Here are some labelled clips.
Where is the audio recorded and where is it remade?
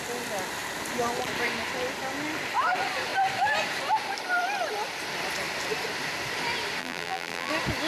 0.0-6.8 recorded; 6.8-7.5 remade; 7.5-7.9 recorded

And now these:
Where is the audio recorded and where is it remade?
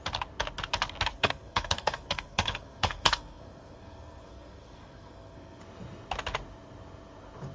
0.0-1.1 recorded; 1.1-5.6 remade; 5.6-7.5 recorded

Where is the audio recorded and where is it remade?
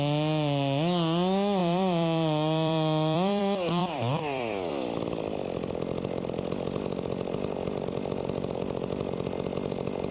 0.0-1.6 recorded; 1.6-3.4 remade; 3.4-3.8 recorded; 3.8-4.7 remade; 4.7-10.1 recorded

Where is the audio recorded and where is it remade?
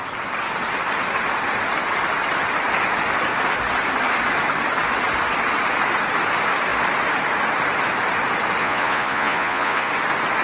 0.0-8.6 recorded; 8.6-9.9 remade; 9.9-10.4 recorded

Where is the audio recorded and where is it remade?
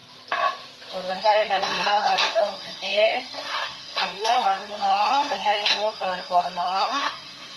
0.0-1.1 recorded; 1.1-7.6 remade